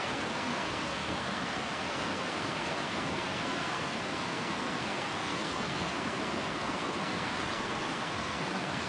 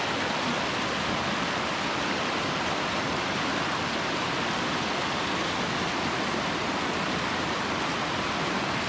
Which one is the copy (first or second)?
first